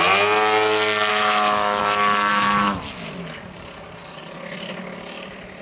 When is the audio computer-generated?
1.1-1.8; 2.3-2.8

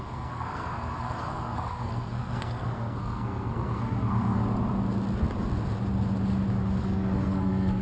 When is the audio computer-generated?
0.0-4.4; 6.8-7.8

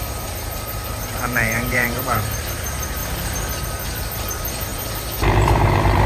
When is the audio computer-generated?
0.0-3.0; 3.6-6.1